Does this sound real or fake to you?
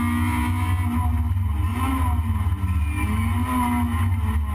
real